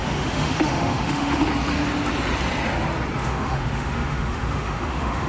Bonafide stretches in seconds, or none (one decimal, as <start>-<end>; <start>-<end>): 1.4-3.2